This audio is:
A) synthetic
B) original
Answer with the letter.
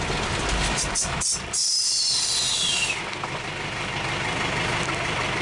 A